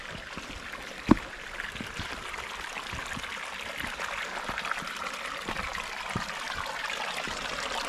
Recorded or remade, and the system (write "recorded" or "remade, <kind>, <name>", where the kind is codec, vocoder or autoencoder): recorded